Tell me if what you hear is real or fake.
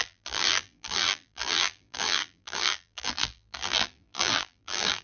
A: fake